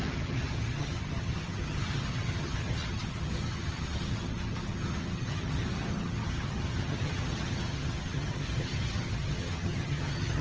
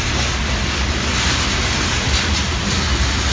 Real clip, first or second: second